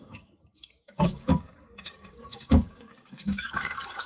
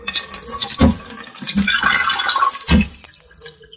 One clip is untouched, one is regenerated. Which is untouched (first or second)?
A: second